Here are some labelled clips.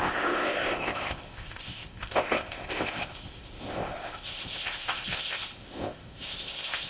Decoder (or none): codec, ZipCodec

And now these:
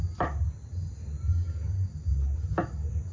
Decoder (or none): none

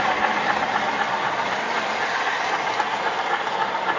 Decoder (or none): none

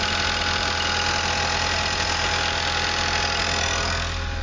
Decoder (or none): none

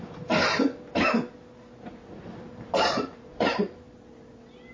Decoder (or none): none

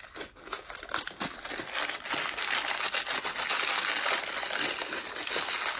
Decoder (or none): none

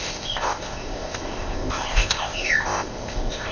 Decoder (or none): codec, ZipCodec